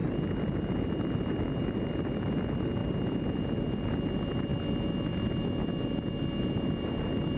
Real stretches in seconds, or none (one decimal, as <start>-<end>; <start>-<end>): 0.0-7.4